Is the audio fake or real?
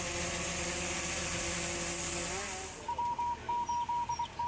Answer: real